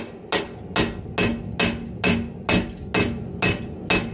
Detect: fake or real real